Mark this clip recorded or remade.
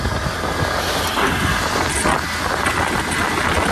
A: recorded